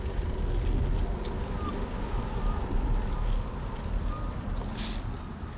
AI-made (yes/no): no